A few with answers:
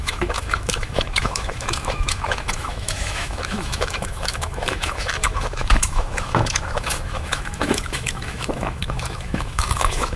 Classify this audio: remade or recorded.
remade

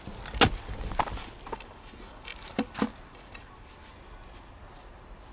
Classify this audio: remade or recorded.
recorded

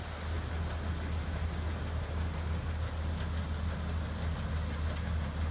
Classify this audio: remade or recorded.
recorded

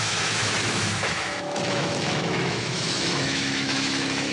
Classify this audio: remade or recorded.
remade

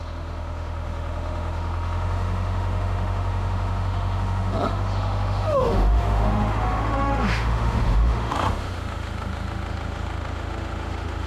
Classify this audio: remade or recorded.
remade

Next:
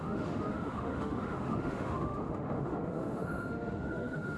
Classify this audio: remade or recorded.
remade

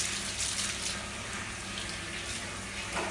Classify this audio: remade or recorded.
recorded